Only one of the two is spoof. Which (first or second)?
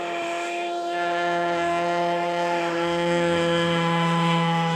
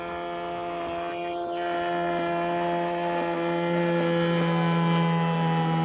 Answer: first